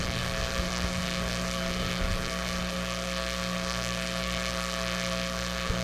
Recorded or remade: remade